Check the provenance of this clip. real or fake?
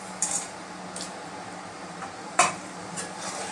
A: fake